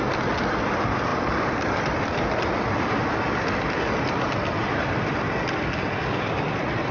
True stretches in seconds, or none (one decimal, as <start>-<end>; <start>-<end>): 3.0-6.1